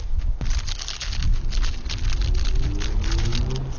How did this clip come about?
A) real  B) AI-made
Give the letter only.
A